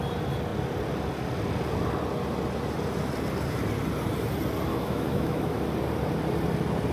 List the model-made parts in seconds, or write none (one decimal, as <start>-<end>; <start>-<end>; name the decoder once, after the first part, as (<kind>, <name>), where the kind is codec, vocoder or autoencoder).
4.7-5.6 (autoencoder, DAC-VAE)